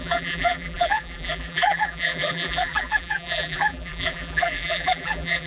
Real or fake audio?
fake